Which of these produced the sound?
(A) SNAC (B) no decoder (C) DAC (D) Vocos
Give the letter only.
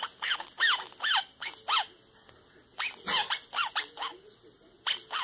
B